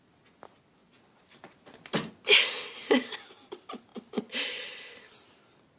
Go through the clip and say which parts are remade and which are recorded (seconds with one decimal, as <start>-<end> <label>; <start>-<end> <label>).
0.0-5.8 recorded